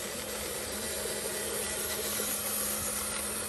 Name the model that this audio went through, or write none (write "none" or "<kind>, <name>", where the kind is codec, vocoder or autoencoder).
none